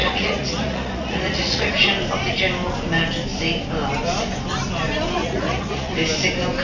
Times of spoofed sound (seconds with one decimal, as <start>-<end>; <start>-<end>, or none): 0.0-1.7; 5.2-5.9